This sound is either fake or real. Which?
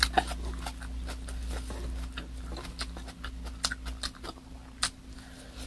real